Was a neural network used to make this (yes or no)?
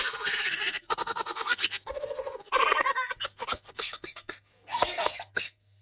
yes